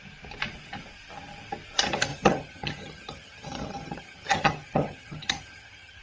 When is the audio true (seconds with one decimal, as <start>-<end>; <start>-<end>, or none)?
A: 0.0-2.1